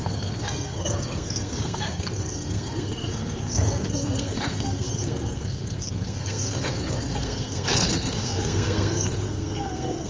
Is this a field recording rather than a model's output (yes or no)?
no